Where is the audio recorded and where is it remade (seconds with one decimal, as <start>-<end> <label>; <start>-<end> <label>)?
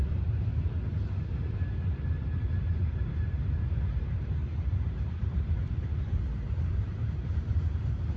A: 0.0-0.5 remade; 0.5-1.3 recorded; 1.3-4.4 remade; 4.4-4.9 recorded; 4.9-8.2 remade